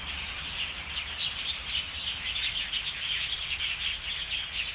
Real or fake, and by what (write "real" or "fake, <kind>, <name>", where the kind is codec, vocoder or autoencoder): real